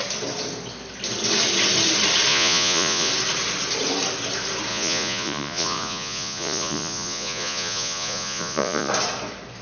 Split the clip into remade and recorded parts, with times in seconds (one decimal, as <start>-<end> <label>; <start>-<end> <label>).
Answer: 0.0-2.3 recorded; 2.3-3.1 remade; 3.1-4.7 recorded; 4.7-8.9 remade; 8.9-9.6 recorded